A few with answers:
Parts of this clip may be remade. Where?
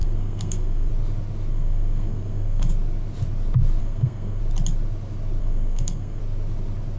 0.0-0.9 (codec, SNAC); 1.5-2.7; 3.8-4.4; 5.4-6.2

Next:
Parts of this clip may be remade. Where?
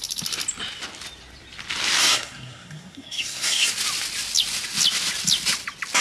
2.0-3.7 (codec, SNAC)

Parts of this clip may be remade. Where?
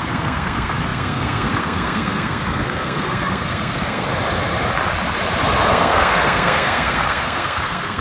0.0-4.1 (codec, SNAC); 5.7-8.0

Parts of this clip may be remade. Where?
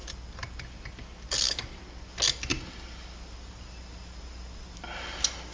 none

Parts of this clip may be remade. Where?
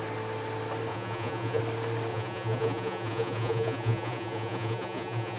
0.9-1.6 (vocoder, Vocos); 2.1-5.4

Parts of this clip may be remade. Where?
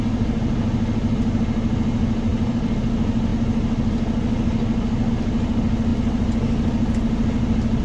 2.3-2.8 (vocoder, BigVGAN v2)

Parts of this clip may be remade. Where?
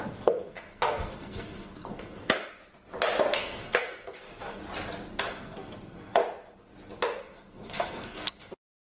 0.0-2.6 (codec, SNAC); 3.4-4.6; 5.2-6.2; 7.2-9.0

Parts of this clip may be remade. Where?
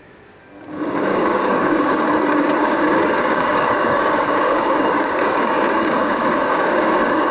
1.1-2.0 (codec, DAC); 2.6-7.3